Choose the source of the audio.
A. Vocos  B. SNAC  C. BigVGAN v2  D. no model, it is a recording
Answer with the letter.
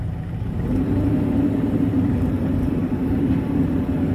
C